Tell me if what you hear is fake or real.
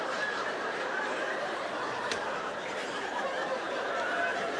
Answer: fake